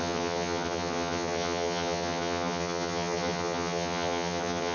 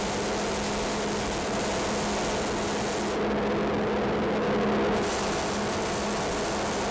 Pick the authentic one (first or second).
second